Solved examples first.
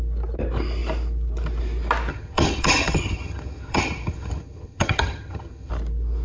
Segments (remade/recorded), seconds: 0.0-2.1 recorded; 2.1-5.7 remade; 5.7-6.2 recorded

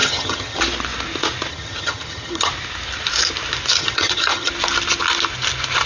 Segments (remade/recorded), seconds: 0.0-0.6 remade; 0.6-1.5 recorded; 1.5-2.5 remade; 2.5-3.8 recorded; 3.8-4.5 remade; 4.5-5.9 recorded

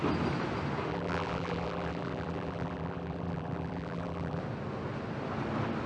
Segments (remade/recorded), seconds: 0.0-0.9 recorded; 0.9-4.4 remade; 4.4-5.9 recorded

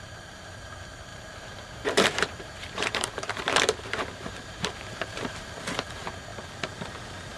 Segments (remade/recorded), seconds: 0.0-1.1 recorded; 1.1-5.5 remade; 5.5-7.4 recorded

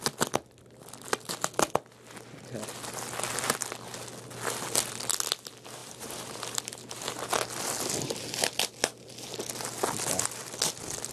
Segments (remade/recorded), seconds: 0.0-5.8 recorded; 5.8-6.6 remade; 6.6-11.1 recorded

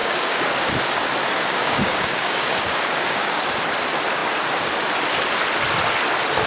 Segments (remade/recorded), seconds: 0.0-0.7 remade; 0.7-1.2 recorded; 1.2-3.4 remade; 3.4-6.5 recorded